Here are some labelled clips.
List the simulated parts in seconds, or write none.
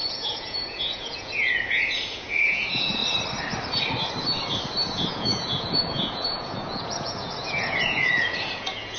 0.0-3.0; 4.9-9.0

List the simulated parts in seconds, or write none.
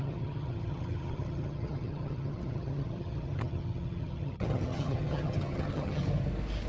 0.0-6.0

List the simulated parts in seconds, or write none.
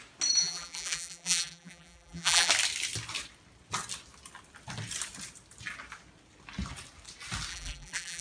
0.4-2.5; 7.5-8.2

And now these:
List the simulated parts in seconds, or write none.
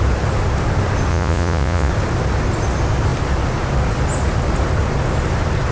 1.1-1.9